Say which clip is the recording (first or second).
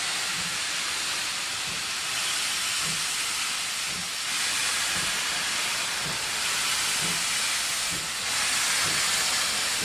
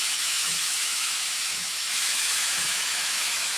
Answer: first